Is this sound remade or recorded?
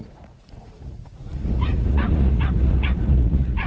remade